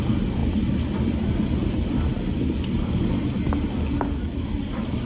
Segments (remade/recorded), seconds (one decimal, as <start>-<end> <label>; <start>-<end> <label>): 0.0-5.0 recorded